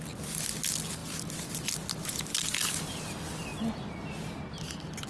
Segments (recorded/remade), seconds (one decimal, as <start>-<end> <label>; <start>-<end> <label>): 0.0-5.1 recorded